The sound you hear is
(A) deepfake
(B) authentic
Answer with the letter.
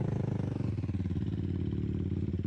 B